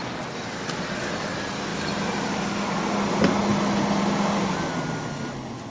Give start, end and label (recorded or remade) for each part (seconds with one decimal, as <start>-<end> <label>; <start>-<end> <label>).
0.0-5.7 recorded